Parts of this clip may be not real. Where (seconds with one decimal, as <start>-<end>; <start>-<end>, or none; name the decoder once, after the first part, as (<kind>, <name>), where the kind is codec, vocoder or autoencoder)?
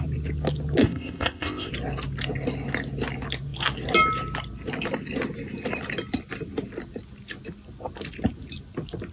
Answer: 0.8-1.7 (codec, ZipCodec)